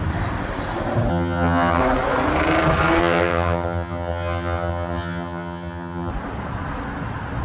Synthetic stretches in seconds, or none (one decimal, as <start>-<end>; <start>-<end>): 1.1-1.8; 3.0-6.1